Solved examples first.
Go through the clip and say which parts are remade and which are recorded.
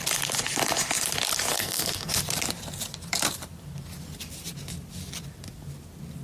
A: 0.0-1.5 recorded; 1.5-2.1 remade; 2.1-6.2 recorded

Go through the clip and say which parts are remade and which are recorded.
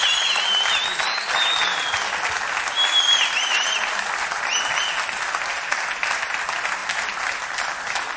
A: 0.0-8.2 recorded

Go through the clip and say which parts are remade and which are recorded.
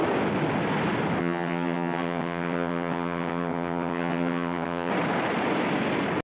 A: 0.0-1.2 recorded; 1.2-4.9 remade; 4.9-6.2 recorded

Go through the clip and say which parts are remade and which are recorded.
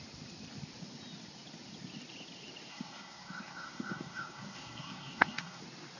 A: 0.0-2.7 recorded; 2.7-5.6 remade; 5.6-6.0 recorded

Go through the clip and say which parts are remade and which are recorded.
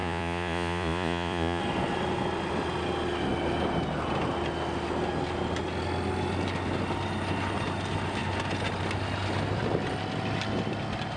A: 0.0-1.6 remade; 1.6-11.2 recorded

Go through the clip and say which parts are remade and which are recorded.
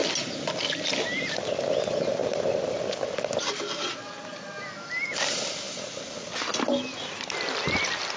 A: 0.0-8.2 recorded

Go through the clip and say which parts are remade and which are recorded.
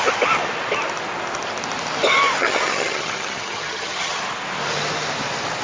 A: 0.0-2.4 recorded; 2.4-4.2 remade; 4.2-5.6 recorded